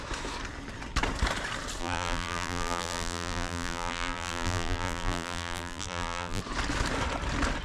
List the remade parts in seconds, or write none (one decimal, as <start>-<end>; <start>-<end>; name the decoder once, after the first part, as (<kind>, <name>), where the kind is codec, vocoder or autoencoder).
1.8-6.4 (vocoder, BigVGAN v2)